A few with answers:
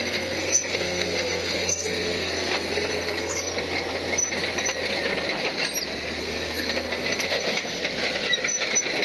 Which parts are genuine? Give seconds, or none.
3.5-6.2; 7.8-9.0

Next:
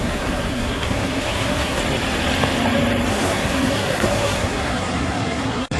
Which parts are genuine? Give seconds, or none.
1.8-3.1